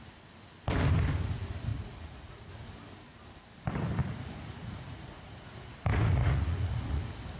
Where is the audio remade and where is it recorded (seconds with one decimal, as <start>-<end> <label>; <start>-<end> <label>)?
0.0-1.7 recorded; 1.7-2.5 remade; 2.5-4.0 recorded; 4.0-7.0 remade; 7.0-7.4 recorded